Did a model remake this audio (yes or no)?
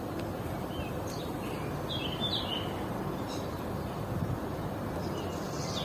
no